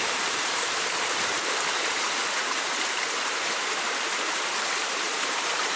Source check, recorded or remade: remade